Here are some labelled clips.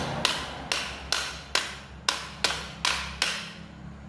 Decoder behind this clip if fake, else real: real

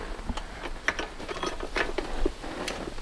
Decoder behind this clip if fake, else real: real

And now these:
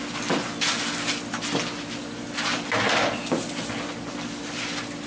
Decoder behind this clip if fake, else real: real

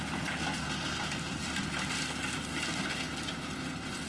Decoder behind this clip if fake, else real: real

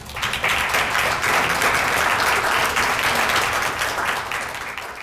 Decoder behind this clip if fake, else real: real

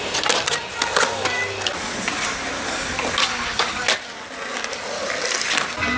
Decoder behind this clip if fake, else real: real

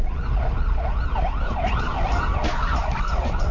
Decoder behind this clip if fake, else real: real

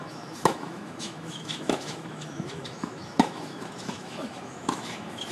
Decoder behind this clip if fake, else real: fake, autoencoder, DAC-VAE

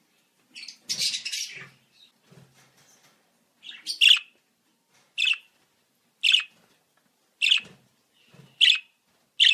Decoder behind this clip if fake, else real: real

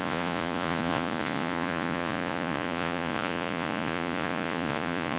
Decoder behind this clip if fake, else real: fake, vocoder, Vocos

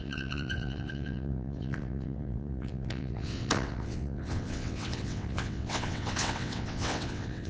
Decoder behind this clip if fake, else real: fake, vocoder, WaveNeXt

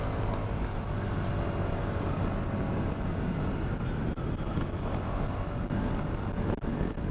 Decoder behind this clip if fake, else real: real